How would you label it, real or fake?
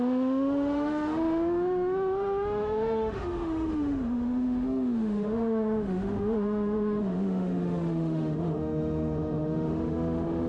fake